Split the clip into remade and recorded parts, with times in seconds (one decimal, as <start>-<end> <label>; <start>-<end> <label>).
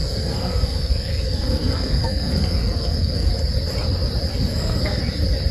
0.0-3.3 remade; 3.3-4.3 recorded; 4.3-5.0 remade; 5.0-5.5 recorded